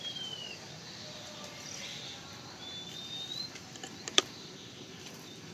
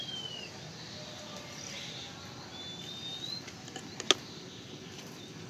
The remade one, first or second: first